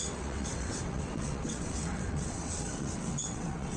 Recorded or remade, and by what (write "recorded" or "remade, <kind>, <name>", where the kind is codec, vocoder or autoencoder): remade, vocoder, WaveNeXt